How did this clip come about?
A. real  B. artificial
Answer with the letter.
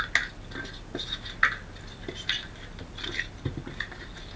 A